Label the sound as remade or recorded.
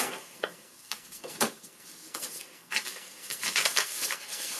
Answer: remade